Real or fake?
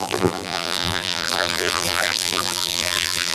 fake